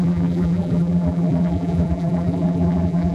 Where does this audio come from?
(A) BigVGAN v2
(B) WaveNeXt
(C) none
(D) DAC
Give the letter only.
A